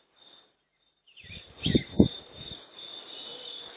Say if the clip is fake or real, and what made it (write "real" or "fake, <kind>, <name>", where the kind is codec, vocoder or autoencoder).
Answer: fake, vocoder, BigVGAN v2